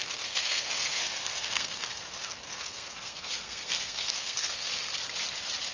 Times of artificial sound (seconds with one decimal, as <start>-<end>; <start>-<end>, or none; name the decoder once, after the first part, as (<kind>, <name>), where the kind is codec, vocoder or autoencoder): 0.0-4.7 (codec, SNAC)